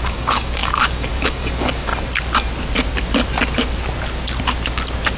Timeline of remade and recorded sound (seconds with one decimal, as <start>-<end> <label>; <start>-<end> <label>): 0.0-1.9 remade; 1.9-5.2 recorded